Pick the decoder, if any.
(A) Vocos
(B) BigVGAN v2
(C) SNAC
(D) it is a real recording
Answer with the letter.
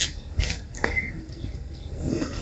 C